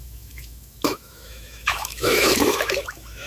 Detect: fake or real fake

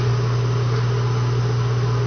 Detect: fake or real real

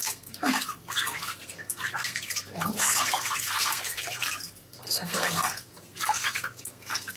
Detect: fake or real fake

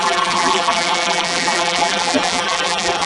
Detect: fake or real fake